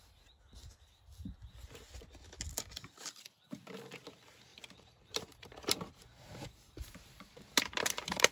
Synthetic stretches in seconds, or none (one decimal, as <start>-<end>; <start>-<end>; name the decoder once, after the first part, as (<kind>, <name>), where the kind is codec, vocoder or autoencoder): 4.5-8.3 (vocoder, BigVGAN v2)